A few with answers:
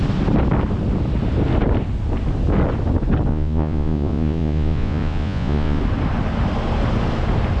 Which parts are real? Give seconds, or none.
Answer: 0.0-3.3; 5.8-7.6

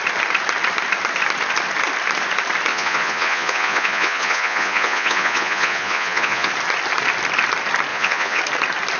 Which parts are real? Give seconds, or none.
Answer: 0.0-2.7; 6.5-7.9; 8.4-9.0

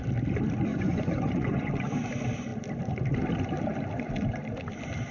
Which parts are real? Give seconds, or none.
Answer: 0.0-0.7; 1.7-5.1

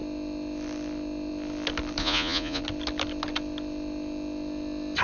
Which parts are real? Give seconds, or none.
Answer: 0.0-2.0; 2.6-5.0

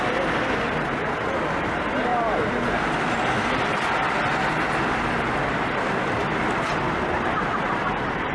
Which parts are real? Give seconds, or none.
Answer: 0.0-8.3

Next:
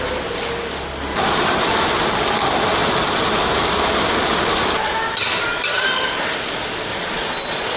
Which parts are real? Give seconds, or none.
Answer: 0.0-6.9

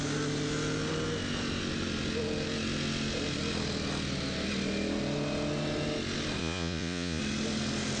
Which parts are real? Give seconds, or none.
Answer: 0.0-6.4; 7.2-8.0

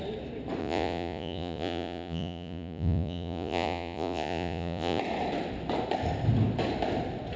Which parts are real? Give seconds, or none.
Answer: 0.0-0.6; 5.0-7.4